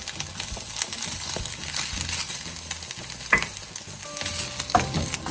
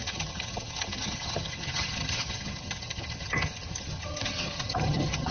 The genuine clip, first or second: first